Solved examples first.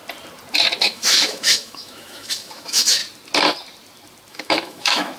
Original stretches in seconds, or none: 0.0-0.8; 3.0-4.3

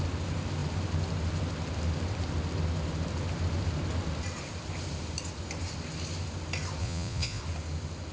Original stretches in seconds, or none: 0.0-6.8; 7.4-8.1

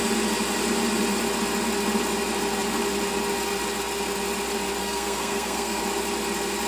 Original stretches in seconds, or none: 0.0-4.8; 5.8-6.7